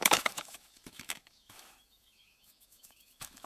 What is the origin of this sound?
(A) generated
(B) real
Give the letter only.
A